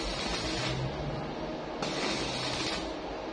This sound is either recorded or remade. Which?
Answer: recorded